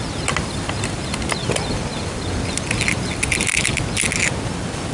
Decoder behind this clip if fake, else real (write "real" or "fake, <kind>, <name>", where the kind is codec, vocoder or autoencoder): real